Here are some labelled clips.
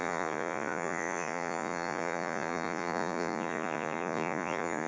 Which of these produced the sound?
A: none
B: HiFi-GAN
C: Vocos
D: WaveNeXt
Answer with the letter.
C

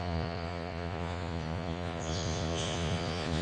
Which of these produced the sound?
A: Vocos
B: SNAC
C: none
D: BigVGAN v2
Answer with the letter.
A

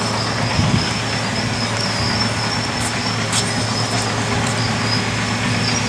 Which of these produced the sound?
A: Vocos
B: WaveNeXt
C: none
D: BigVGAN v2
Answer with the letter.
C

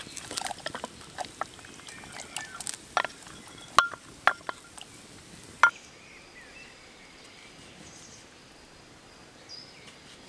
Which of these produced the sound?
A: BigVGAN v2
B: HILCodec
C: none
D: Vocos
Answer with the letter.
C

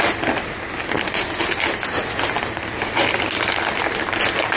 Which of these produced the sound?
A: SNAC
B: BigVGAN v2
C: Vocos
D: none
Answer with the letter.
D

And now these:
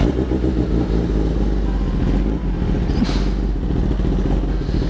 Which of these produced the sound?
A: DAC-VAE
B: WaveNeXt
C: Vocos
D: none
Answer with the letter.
D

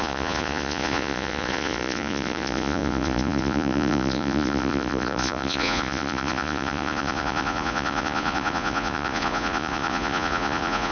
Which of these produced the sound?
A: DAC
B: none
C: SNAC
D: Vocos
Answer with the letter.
D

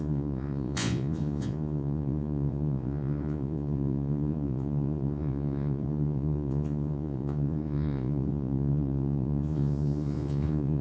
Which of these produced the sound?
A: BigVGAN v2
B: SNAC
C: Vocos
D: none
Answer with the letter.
C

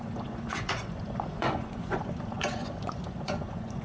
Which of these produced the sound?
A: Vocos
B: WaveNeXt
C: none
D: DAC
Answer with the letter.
A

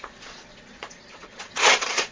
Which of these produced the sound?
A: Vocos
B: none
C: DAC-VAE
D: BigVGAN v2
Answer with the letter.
A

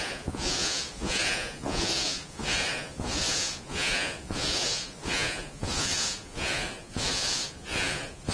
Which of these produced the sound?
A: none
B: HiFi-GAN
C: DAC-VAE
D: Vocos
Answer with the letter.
D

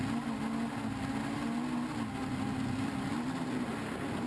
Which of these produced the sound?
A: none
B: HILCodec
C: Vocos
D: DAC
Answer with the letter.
A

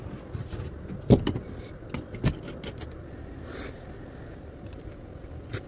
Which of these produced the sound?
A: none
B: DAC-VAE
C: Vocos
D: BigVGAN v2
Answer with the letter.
A